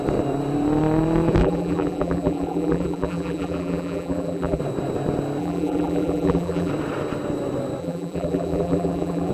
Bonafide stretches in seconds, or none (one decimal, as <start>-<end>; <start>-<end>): 0.0-1.4; 4.6-5.4; 6.7-7.8